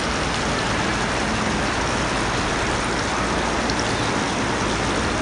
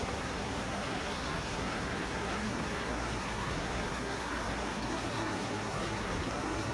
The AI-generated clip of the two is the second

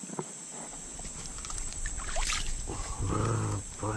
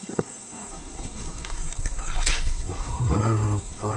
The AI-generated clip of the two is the second